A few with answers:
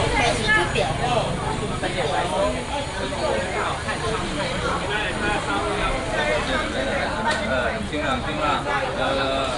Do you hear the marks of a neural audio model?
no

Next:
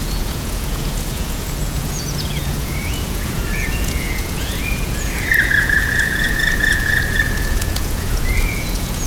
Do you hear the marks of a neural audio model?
yes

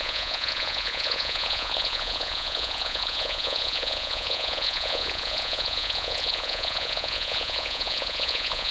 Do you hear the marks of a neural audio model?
yes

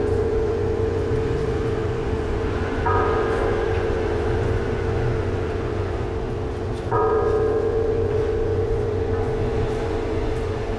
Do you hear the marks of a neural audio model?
yes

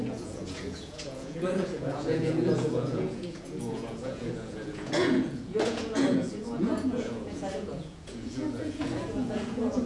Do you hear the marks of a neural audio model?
yes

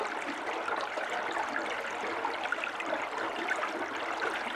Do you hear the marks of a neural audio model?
no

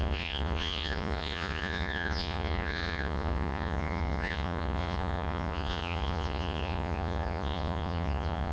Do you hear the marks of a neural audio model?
yes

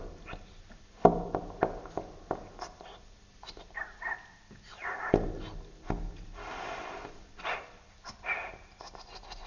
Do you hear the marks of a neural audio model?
no